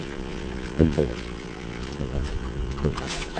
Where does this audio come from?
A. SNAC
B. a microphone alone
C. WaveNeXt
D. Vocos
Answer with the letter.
D